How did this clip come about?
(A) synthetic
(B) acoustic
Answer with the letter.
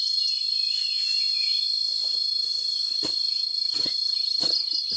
B